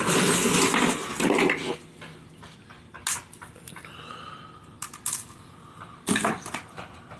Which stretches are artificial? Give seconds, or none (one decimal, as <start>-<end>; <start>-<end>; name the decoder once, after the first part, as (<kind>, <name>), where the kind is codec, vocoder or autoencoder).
none